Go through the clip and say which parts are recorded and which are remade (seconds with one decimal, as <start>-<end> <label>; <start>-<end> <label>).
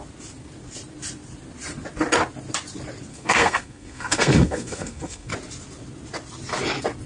0.0-3.1 recorded; 3.1-5.3 remade; 5.3-7.1 recorded